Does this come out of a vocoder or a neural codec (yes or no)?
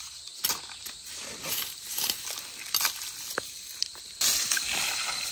no